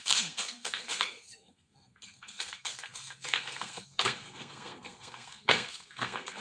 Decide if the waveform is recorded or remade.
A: remade